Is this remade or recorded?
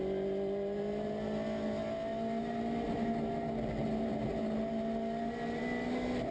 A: recorded